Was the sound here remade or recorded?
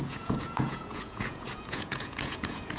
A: remade